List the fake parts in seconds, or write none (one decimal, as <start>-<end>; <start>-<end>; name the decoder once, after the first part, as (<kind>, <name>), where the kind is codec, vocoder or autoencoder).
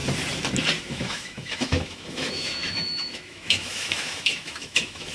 0.8-5.1 (autoencoder, DAC-VAE)